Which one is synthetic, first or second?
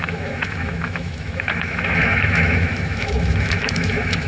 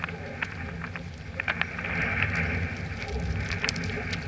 first